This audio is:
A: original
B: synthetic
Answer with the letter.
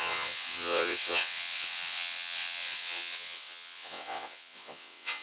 B